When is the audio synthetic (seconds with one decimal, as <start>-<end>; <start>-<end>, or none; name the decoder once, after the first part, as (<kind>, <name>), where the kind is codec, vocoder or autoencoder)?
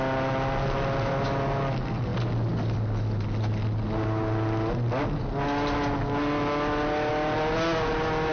none